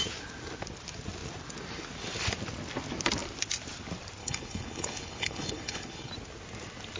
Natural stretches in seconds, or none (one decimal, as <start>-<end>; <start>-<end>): 0.0-4.2; 6.1-7.0